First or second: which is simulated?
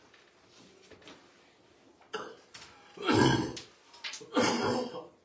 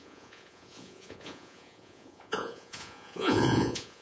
second